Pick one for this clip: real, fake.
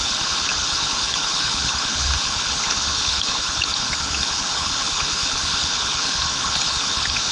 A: fake